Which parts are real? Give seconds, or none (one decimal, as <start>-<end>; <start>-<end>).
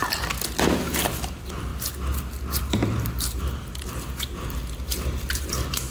0.0-0.6; 1.7-2.6